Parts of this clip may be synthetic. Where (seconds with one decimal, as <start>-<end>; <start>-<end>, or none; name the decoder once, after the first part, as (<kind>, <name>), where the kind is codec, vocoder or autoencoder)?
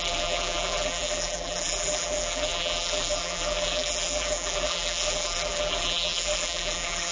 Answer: 0.0-7.1 (vocoder, BigVGAN v2)